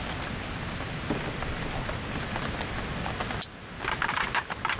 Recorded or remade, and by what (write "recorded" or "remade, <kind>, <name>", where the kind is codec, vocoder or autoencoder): recorded